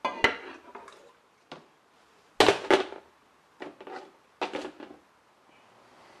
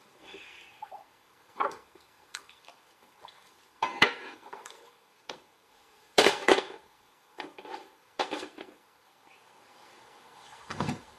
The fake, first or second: second